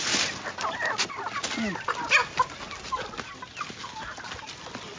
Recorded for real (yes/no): yes